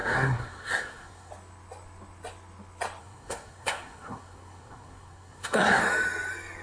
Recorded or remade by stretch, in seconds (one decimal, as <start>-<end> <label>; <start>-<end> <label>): 0.0-1.3 remade; 1.3-3.0 recorded; 3.0-5.8 remade; 5.8-6.6 recorded